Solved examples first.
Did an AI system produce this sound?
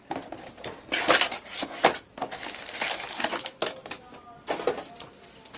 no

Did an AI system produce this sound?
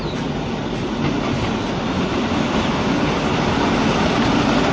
no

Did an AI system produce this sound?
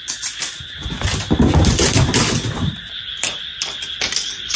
no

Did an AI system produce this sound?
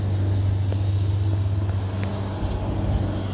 no